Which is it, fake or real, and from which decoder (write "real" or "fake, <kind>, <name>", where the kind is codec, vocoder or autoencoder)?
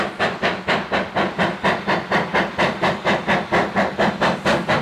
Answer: real